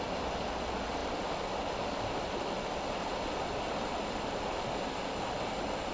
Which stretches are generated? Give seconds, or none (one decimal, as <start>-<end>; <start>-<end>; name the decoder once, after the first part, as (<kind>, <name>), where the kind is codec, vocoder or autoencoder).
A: none